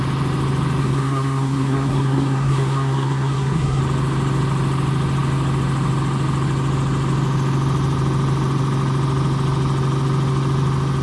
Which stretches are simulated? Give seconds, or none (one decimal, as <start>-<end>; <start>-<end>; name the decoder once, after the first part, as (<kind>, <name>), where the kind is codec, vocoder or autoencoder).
0.8-3.8 (codec, SNAC)